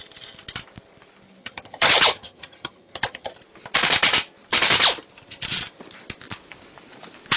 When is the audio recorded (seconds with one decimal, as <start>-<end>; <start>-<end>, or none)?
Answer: 0.0-1.4; 3.3-7.4